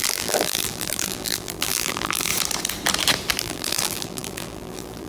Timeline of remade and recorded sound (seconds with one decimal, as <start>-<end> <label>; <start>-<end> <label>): 0.0-2.3 remade; 2.3-3.4 recorded; 3.4-5.1 remade